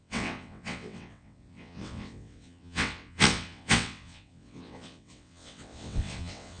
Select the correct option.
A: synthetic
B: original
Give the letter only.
A